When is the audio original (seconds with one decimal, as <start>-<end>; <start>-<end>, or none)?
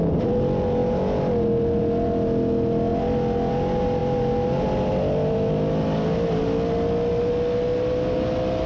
0.0-8.7